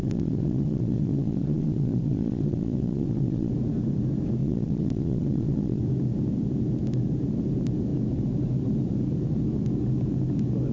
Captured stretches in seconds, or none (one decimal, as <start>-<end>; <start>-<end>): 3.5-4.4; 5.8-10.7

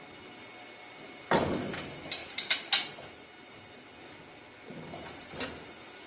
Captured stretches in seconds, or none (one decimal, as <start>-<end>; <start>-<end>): 0.0-6.1

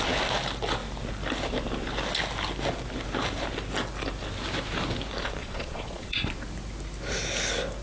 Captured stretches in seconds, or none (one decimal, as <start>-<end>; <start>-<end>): 0.0-5.4; 6.3-7.8

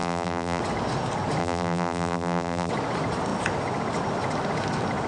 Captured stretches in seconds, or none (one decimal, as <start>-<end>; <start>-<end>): 0.6-1.4; 2.7-5.1